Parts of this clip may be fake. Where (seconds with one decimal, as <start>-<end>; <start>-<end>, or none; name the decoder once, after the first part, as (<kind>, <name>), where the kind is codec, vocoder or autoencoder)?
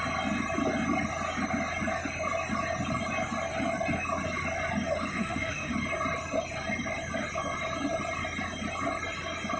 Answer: 5.1-5.7 (autoencoder, DAC-VAE)